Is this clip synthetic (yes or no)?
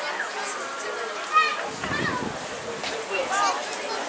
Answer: no